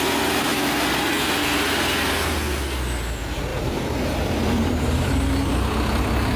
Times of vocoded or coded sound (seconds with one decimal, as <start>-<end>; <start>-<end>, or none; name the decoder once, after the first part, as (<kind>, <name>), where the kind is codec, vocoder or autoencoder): 3.5-5.1 (vocoder, BigVGAN v2)